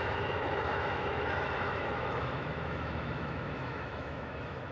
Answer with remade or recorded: remade